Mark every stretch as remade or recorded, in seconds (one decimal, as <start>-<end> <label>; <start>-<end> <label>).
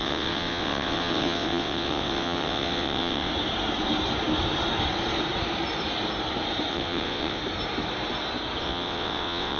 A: 0.0-3.3 remade; 3.3-6.7 recorded; 6.7-7.4 remade; 7.4-8.6 recorded; 8.6-9.6 remade